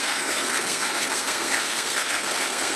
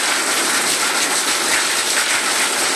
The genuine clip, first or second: second